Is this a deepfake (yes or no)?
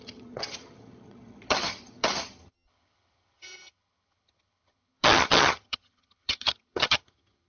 yes